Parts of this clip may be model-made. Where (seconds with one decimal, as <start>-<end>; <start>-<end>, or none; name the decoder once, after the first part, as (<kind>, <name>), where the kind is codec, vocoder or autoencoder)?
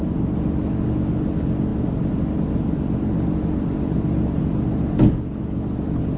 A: none